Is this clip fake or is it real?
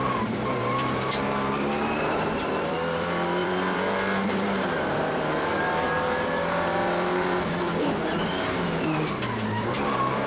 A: fake